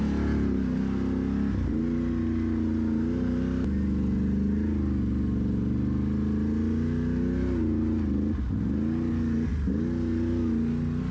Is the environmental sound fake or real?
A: real